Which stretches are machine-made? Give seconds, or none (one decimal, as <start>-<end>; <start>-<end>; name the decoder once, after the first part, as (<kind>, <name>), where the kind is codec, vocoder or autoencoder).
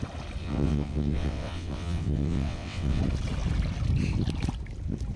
0.4-3.0 (vocoder, WaveNeXt)